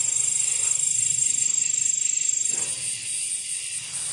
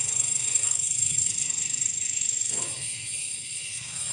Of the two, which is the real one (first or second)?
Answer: first